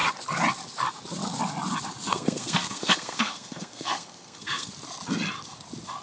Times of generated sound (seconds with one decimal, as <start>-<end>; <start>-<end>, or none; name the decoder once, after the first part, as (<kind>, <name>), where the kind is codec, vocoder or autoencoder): 2.1-4.7 (codec, SNAC)